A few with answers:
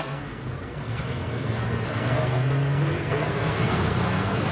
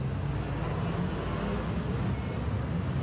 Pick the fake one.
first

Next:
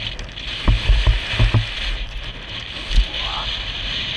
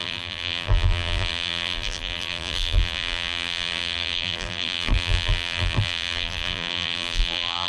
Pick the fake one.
second